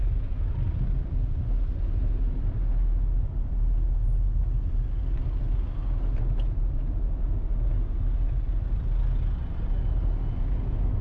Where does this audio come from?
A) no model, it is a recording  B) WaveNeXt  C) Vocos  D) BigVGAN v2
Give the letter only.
A